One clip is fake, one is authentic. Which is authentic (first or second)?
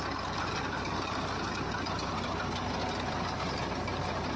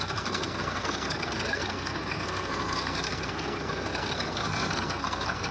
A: first